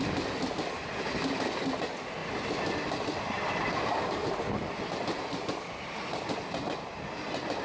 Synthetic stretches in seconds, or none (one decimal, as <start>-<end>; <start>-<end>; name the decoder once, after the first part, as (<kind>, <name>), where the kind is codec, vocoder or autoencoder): none

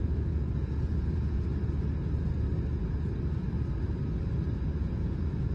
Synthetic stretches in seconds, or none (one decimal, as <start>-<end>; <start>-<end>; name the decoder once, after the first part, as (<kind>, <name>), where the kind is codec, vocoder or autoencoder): 0.0-1.5 (vocoder, Vocos); 4.8-5.5